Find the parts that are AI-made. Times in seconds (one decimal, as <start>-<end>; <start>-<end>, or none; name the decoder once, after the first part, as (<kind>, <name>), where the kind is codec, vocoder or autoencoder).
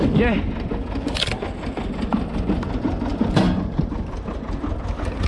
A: 3.1-3.9 (vocoder, BigVGAN v2)